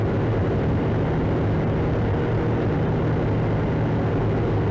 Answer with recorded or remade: recorded